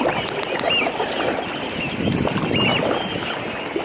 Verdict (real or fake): real